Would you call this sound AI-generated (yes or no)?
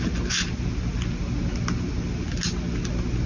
no